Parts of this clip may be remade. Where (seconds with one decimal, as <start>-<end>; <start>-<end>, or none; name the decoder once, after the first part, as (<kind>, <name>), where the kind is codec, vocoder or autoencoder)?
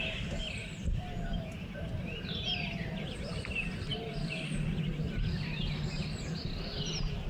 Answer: 0.6-3.3 (vocoder, BigVGAN v2)